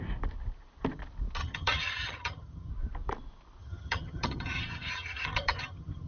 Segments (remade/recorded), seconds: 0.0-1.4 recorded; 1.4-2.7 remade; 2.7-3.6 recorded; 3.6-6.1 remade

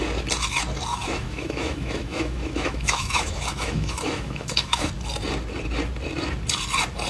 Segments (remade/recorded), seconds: 0.0-0.9 recorded; 0.9-4.9 remade; 4.9-7.1 recorded

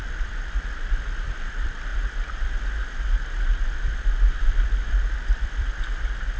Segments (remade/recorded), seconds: 0.0-6.4 remade

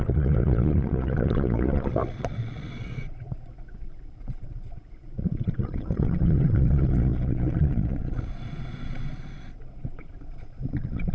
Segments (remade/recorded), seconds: 0.0-11.1 remade

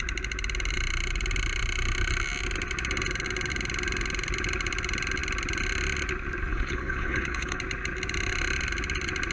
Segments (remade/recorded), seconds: 0.0-6.5 recorded; 6.5-7.6 remade; 7.6-9.3 recorded

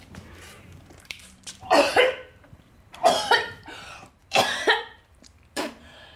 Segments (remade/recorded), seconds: 0.0-6.2 remade

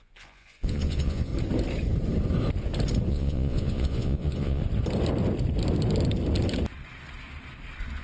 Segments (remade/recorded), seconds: 0.0-1.3 remade; 1.3-3.1 recorded; 3.1-4.6 remade; 4.6-8.0 recorded

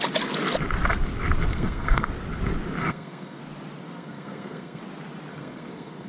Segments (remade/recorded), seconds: 0.0-1.5 recorded; 1.5-2.1 remade; 2.1-2.8 recorded; 2.8-3.4 remade; 3.4-3.8 recorded; 3.8-4.8 remade; 4.8-5.3 recorded; 5.3-6.1 remade